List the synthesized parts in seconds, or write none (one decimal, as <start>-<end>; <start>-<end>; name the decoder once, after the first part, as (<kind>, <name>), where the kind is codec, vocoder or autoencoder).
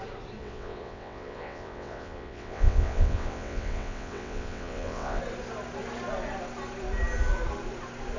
0.4-5.2 (vocoder, WaveNeXt)